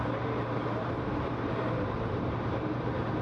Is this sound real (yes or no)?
no